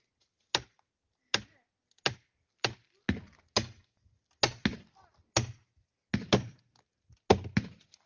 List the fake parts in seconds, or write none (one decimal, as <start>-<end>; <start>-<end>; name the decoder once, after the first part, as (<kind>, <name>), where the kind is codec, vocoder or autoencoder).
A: none